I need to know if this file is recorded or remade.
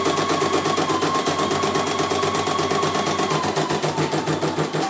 recorded